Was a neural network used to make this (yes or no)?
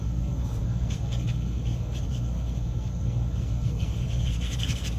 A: yes